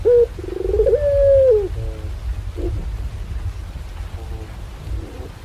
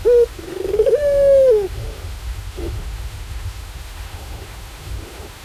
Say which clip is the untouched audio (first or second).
first